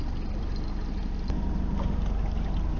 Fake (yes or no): no